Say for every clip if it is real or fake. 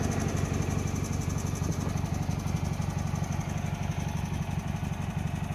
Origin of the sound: real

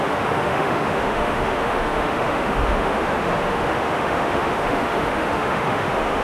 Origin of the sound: fake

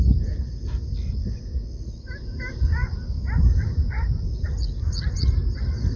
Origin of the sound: real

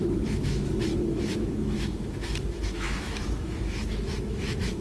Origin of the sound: fake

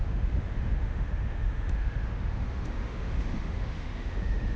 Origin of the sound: fake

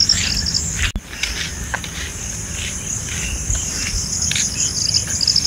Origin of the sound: real